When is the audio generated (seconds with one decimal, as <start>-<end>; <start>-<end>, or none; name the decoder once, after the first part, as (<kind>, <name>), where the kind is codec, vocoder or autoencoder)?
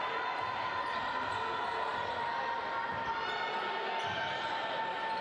none